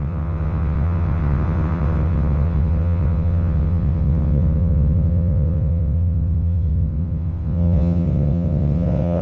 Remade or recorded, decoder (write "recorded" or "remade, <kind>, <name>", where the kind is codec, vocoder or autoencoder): remade, vocoder, WaveNeXt